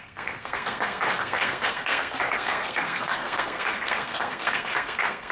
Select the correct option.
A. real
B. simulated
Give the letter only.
B